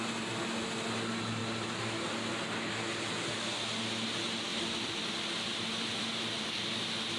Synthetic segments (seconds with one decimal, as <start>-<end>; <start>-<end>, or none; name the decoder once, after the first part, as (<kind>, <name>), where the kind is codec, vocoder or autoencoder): none